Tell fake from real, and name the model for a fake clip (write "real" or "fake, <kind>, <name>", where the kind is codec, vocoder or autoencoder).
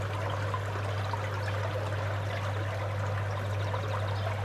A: real